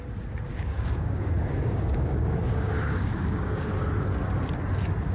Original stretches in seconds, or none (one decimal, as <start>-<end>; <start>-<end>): 0.0-0.5; 3.6-5.1